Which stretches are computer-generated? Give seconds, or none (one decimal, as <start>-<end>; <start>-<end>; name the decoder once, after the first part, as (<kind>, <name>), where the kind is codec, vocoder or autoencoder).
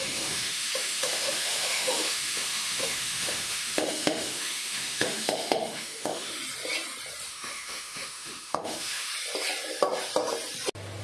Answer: 0.0-6.4 (autoencoder, DAC-VAE); 7.3-9.1